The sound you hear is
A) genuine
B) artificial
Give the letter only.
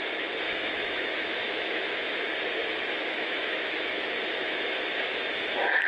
B